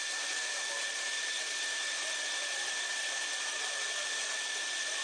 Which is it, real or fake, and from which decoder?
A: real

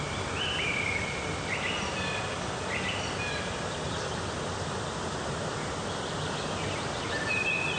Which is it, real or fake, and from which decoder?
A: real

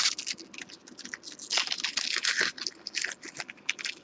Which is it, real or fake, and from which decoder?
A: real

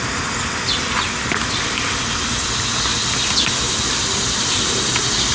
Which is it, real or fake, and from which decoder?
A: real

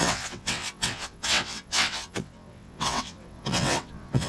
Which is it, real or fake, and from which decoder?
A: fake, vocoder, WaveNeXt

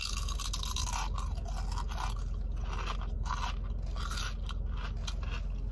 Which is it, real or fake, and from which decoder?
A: real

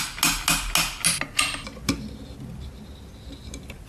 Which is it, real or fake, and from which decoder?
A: real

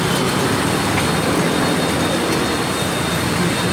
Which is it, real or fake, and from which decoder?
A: real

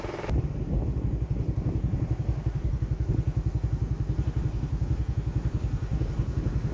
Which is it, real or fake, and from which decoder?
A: real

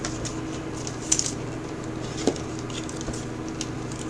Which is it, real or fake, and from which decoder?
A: real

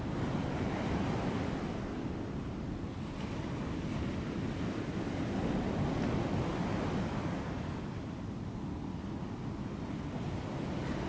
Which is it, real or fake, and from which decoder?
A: real